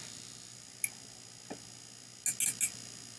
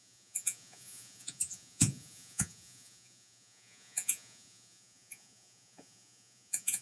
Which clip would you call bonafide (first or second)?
first